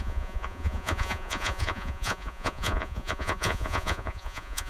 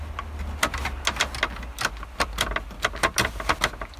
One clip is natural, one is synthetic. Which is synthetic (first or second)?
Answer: first